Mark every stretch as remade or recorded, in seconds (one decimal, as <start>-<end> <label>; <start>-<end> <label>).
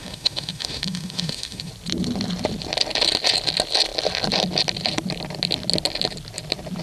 0.0-1.7 remade; 1.7-6.8 recorded